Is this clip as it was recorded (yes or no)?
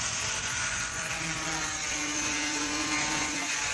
no